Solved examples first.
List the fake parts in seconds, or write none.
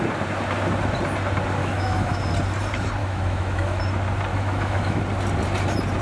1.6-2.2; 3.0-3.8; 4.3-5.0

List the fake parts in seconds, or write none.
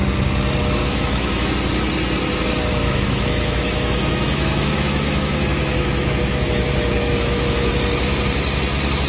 0.8-1.5; 2.7-7.7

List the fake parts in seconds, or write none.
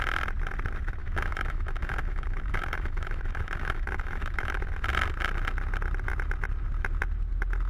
1.0-4.6